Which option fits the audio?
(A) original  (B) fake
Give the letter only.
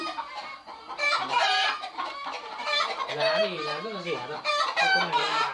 B